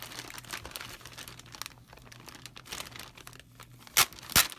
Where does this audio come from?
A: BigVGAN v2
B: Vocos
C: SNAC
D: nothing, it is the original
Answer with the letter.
D